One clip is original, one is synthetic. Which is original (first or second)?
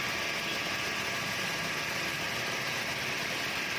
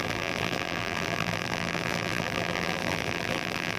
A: first